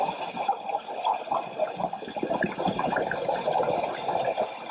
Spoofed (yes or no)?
no